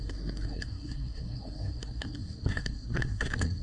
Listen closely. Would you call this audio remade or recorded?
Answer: remade